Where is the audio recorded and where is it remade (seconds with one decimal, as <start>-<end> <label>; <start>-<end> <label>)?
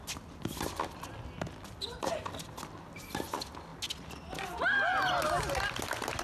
0.0-6.2 recorded